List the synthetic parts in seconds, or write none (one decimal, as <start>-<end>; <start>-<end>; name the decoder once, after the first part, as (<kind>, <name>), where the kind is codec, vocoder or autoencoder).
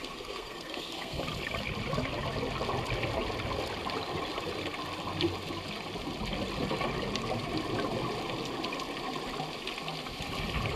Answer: 0.0-1.2 (codec, SNAC)